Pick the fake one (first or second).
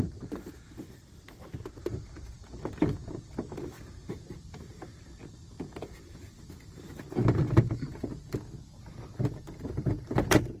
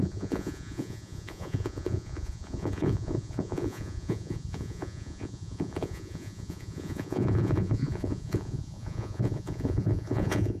second